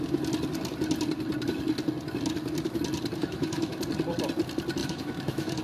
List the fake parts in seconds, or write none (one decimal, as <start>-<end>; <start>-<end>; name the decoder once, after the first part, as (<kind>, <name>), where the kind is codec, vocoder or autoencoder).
3.2-3.8 (autoencoder, DAC-VAE); 4.8-5.6